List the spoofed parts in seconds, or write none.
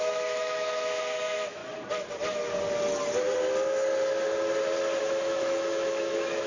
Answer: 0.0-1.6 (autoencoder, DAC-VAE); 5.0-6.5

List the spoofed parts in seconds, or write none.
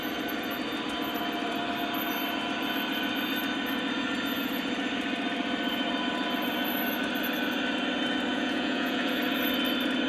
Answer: 8.3-9.2 (vocoder, Vocos)